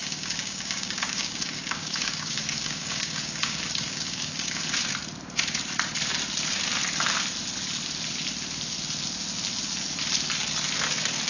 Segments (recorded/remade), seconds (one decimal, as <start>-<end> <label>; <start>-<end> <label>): 0.0-4.6 remade; 4.6-11.3 recorded